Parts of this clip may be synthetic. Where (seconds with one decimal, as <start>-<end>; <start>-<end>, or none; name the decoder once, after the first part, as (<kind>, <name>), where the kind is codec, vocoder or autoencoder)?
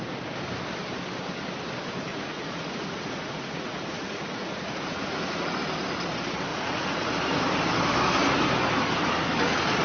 2.1-5.5 (vocoder, Vocos); 6.5-7.1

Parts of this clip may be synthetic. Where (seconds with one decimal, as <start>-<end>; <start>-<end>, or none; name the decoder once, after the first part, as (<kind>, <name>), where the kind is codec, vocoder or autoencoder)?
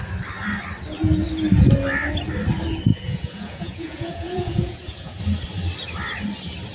2.9-5.2 (vocoder, Vocos)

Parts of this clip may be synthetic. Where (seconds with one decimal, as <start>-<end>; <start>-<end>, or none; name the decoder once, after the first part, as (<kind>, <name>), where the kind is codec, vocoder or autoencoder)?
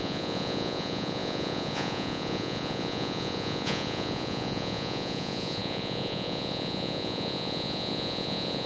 0.0-8.7 (vocoder, Vocos)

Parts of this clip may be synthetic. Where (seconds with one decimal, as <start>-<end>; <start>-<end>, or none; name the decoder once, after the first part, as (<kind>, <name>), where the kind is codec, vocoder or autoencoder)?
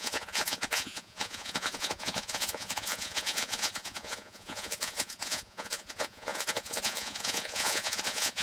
0.0-8.4 (vocoder, Vocos)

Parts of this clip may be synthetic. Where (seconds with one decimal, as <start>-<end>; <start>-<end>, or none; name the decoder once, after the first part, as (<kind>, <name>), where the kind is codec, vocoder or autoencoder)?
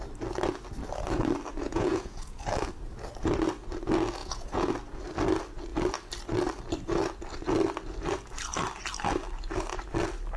1.6-2.4 (vocoder, Vocos); 4.2-4.7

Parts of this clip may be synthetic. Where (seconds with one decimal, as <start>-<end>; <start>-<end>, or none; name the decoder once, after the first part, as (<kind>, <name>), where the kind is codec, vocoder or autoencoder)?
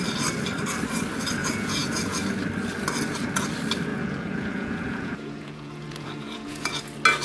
1.4-2.2 (vocoder, Vocos); 3.9-6.8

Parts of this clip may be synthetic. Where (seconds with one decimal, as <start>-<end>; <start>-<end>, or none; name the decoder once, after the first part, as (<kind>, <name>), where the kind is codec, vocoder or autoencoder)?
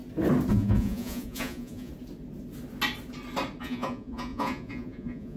0.5-1.9 (vocoder, Vocos); 3.6-5.4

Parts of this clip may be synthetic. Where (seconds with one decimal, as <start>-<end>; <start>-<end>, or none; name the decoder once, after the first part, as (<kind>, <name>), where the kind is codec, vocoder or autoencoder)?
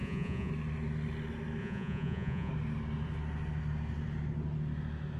0.0-0.5 (vocoder, Vocos); 1.6-2.5